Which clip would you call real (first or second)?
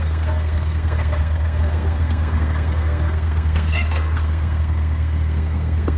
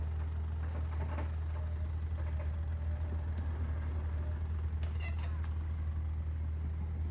second